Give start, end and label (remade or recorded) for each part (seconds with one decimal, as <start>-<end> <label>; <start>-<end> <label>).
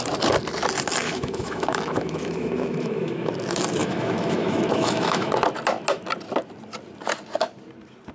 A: 0.0-1.0 recorded; 1.0-3.3 remade; 3.3-3.8 recorded; 3.8-5.3 remade; 5.3-8.1 recorded